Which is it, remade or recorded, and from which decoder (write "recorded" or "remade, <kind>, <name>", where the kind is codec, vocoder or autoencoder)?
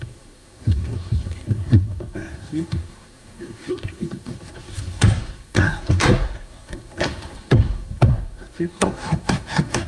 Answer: remade, codec, SNAC